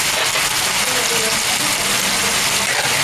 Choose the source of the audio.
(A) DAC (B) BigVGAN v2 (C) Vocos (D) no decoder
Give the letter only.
D